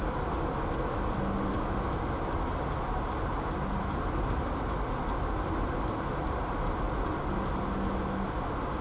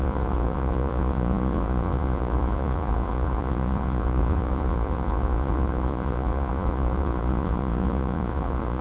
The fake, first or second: second